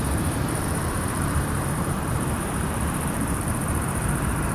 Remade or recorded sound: remade